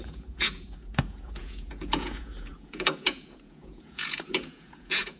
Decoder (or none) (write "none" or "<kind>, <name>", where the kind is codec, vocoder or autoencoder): vocoder, Vocos